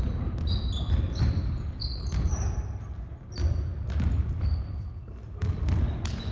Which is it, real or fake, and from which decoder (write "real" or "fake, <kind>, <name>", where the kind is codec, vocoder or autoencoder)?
real